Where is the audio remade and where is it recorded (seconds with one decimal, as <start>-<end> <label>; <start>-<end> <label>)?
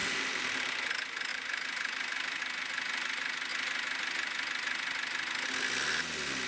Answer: 0.0-0.8 remade; 0.8-1.3 recorded; 1.3-2.4 remade; 2.4-6.5 recorded